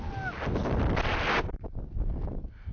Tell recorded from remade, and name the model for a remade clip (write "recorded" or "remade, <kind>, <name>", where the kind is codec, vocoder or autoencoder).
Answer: recorded